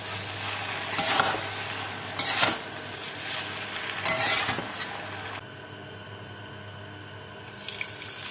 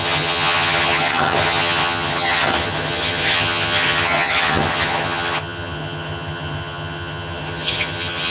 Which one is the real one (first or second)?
first